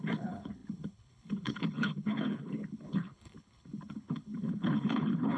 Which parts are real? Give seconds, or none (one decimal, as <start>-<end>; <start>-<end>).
none